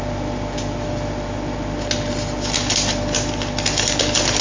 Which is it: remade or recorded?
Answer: recorded